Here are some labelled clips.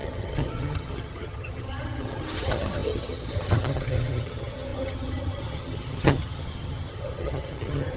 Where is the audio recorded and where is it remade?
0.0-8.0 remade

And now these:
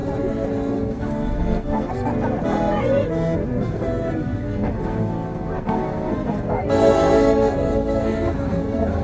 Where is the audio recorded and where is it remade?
0.0-0.7 recorded; 0.7-2.1 remade; 2.1-3.5 recorded; 3.5-9.0 remade